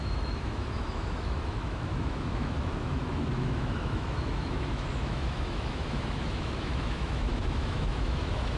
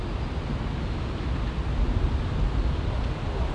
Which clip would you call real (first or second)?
second